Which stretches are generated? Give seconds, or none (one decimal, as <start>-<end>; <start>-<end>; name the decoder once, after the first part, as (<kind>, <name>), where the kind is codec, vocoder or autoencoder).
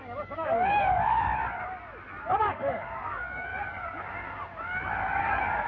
0.0-1.3 (codec, DAC); 2.4-3.5; 5.2-5.7